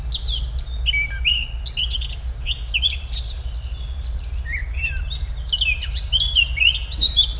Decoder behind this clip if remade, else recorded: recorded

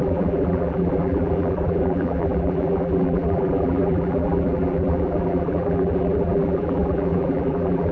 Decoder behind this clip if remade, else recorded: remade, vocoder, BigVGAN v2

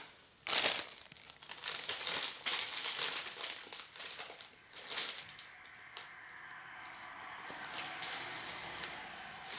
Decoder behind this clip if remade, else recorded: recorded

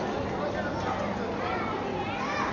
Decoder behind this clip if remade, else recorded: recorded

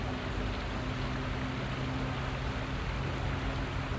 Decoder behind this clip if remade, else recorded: recorded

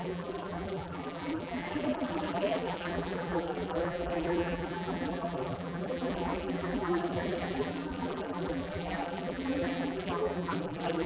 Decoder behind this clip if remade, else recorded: remade, vocoder, BigVGAN v2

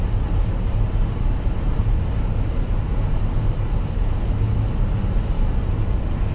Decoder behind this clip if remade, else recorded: recorded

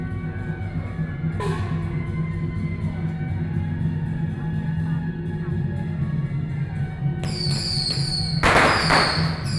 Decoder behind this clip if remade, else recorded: recorded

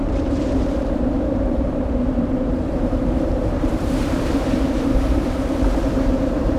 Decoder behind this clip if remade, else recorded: remade, vocoder, BigVGAN v2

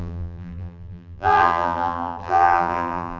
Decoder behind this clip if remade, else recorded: remade, vocoder, BigVGAN v2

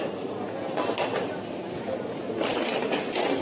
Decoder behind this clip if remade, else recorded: remade, vocoder, BigVGAN v2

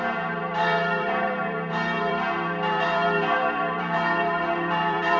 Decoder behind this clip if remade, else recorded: remade, vocoder, BigVGAN v2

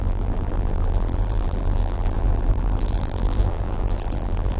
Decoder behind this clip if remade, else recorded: remade, vocoder, BigVGAN v2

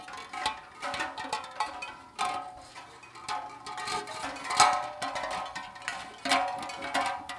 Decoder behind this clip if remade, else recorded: recorded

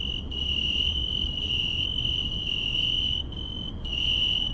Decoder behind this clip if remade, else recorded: remade, vocoder, BigVGAN v2